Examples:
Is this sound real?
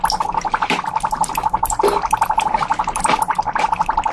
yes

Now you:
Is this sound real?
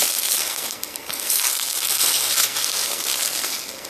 no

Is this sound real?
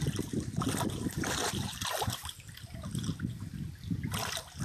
yes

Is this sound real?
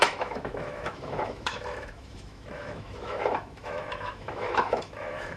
no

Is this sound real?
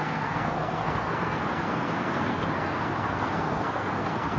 no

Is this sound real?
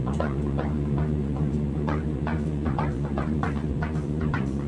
no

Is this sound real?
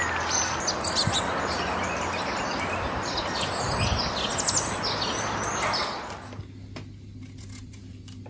yes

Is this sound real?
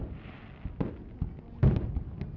yes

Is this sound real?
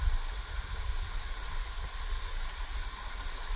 yes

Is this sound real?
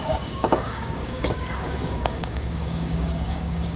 no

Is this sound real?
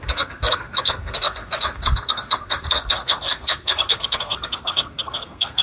no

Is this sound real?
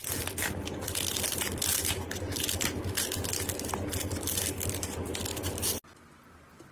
yes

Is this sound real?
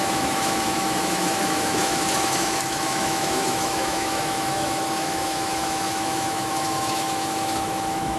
no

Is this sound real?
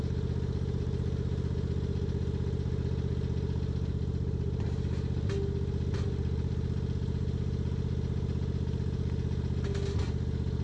yes